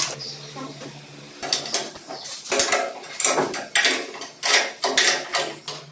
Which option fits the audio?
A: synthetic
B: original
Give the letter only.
B